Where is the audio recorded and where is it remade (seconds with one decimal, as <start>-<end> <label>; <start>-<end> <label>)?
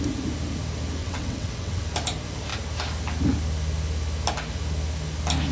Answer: 0.0-1.0 recorded; 1.0-1.8 remade; 1.8-5.5 recorded